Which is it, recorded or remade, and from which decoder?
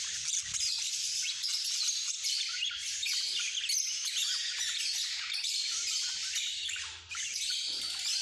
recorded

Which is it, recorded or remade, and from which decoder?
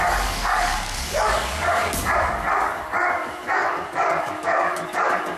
remade, codec, DAC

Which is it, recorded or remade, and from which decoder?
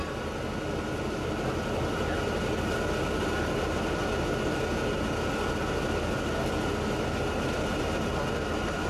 recorded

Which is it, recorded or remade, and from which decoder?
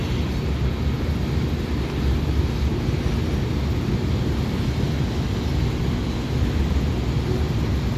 recorded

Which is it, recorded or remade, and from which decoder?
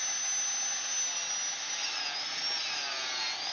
recorded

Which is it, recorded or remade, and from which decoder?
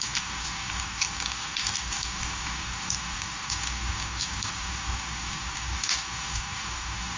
remade, codec, DAC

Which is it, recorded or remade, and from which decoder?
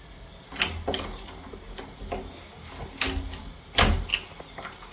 recorded